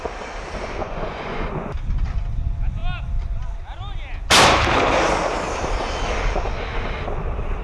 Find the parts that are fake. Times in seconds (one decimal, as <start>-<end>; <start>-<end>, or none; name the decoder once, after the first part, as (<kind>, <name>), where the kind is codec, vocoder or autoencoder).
0.8-1.7 (vocoder, Vocos)